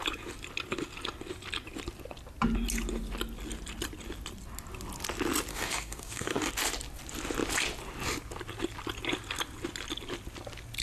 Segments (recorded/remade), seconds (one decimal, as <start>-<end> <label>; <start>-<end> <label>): 0.0-5.5 recorded; 5.5-6.5 remade; 6.5-10.8 recorded